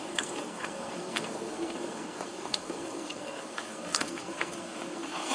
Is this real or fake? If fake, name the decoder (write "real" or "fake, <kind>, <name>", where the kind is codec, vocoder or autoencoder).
fake, codec, SNAC